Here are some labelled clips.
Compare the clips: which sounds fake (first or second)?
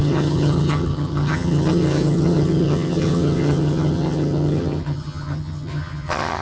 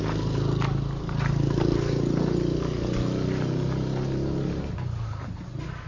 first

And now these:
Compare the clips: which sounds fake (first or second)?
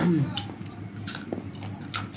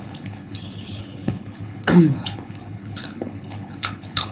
second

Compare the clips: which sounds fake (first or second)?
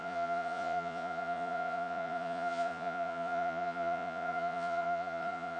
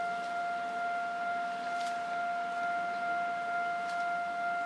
first